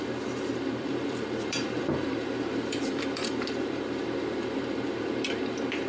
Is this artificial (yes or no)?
yes